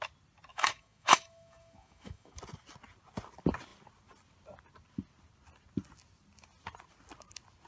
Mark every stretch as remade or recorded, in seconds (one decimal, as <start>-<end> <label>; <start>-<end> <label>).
0.0-0.5 recorded; 0.5-2.4 remade; 2.4-7.7 recorded